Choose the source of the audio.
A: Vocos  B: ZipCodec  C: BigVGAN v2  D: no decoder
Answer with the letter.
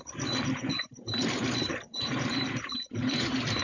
C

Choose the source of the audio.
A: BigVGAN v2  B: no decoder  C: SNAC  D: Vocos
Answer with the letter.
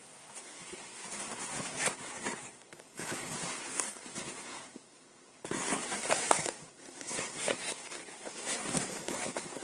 C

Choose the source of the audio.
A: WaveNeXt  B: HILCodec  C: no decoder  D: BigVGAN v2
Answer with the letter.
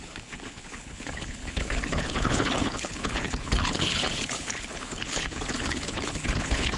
B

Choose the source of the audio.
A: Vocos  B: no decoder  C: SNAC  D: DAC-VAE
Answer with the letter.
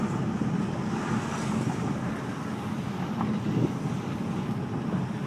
B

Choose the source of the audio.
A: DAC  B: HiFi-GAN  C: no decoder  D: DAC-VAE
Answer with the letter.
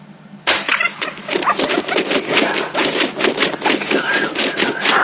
C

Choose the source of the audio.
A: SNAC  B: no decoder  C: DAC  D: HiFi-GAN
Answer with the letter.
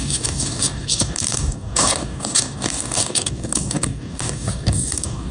C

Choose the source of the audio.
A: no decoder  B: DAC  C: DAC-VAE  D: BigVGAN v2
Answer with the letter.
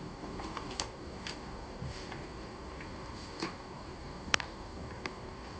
B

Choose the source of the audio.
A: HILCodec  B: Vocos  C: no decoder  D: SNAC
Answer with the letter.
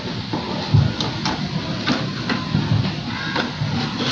C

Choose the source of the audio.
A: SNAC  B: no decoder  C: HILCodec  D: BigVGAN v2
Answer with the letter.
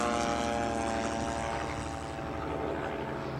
B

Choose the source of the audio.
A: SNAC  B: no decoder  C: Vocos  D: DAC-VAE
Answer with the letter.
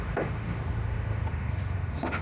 D